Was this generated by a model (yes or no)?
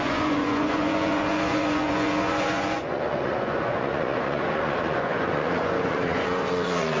yes